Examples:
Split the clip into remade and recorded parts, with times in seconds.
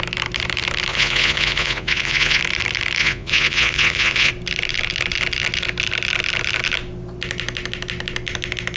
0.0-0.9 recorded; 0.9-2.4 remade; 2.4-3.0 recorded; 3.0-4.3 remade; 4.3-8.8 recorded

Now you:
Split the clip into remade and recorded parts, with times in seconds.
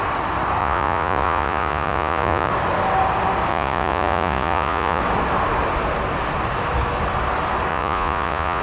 0.0-0.6 recorded; 0.6-2.5 remade; 2.5-3.5 recorded; 3.5-5.0 remade; 5.0-7.7 recorded; 7.7-8.6 remade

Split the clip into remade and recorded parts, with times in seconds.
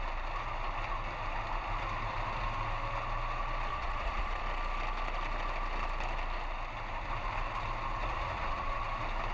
0.0-3.7 recorded; 3.7-4.4 remade; 4.4-8.1 recorded; 8.1-8.8 remade; 8.8-9.3 recorded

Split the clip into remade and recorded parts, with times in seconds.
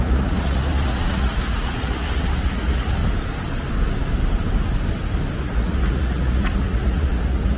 0.0-3.0 remade; 3.0-5.4 recorded; 5.4-7.6 remade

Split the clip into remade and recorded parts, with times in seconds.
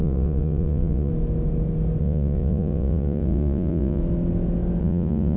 0.0-1.1 remade; 1.1-2.0 recorded; 2.0-4.0 remade; 4.0-4.8 recorded; 4.8-5.4 remade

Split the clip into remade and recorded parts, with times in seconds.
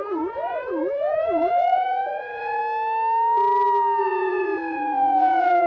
0.0-2.6 remade; 2.6-4.0 recorded; 4.0-5.7 remade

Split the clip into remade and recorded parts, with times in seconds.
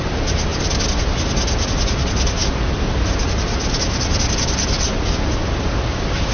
0.0-6.3 recorded